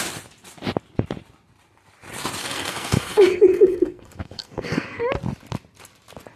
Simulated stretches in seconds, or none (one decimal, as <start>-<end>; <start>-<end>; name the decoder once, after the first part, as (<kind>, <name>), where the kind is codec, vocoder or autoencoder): 2.4-5.0 (codec, SNAC)